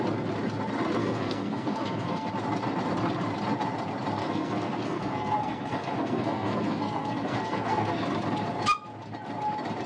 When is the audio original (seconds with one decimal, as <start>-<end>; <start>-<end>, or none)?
0.0-1.0; 2.3-4.2; 8.0-9.9